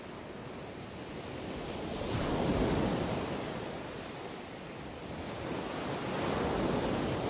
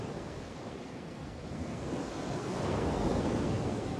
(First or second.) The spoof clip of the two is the second